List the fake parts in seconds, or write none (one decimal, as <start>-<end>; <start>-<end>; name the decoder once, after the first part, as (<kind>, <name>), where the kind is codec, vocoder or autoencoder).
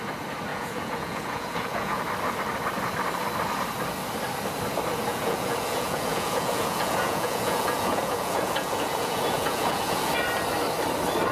0.5-2.0 (vocoder, Vocos); 5.1-10.1